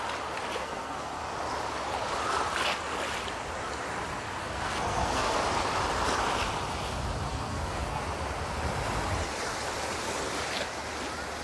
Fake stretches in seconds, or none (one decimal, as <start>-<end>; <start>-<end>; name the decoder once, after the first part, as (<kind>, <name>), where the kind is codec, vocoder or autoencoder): 0.6-1.2 (codec, SNAC); 4.4-5.4; 7.3-8.0

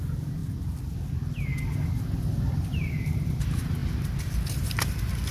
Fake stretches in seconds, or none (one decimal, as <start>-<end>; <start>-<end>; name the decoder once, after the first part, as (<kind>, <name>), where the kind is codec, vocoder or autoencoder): none

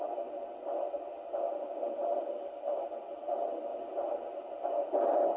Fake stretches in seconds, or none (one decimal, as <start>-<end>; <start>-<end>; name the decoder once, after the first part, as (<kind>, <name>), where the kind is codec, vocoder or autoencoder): none

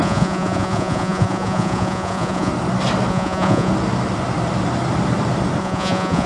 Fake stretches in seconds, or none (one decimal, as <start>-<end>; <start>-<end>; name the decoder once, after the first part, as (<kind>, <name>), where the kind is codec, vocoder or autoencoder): 0.0-2.5 (vocoder, Vocos); 3.1-3.7; 5.6-6.3

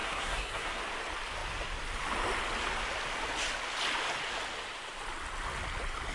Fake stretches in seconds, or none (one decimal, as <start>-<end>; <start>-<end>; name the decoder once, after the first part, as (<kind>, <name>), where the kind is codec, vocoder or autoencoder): 0.0-0.8 (codec, SNAC)

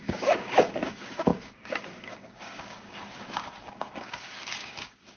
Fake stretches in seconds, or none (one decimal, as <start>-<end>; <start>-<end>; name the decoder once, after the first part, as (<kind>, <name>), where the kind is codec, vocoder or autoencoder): 0.0-5.2 (codec, DAC)

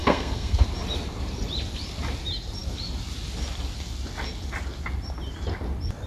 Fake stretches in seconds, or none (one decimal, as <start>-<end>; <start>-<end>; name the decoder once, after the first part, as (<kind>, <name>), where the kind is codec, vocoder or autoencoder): 0.0-0.6 (codec, SNAC)